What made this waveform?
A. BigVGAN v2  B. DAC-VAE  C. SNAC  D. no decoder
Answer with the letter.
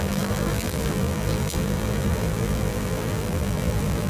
A